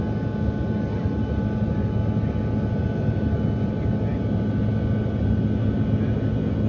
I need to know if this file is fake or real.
real